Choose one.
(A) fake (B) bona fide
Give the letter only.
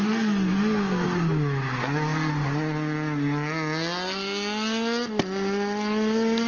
B